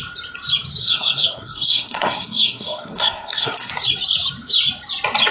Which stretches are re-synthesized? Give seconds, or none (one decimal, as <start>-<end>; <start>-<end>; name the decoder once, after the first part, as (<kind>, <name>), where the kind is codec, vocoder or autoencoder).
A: 0.8-3.7 (codec, SNAC)